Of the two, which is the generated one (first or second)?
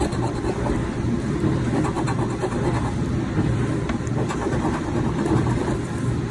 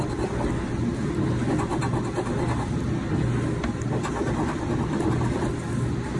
first